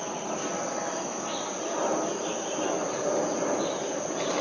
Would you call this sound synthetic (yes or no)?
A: no